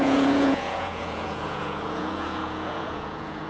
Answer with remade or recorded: remade